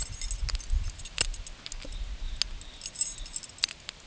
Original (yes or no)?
yes